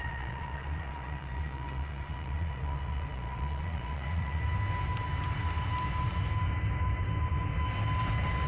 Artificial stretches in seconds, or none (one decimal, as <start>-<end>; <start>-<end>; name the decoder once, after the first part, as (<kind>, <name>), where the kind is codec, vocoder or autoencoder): 0.0-4.4 (vocoder, Vocos)